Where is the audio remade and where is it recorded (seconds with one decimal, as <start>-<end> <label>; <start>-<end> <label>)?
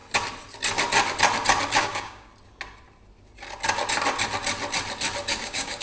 0.0-1.8 recorded; 1.8-2.3 remade; 2.3-5.3 recorded; 5.3-5.8 remade